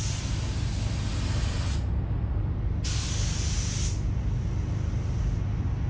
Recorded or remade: recorded